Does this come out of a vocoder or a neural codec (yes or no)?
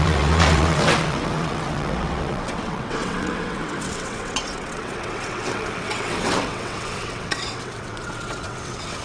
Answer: yes